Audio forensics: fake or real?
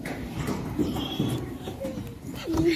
fake